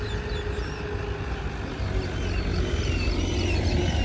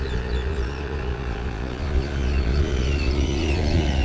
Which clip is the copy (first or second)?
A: second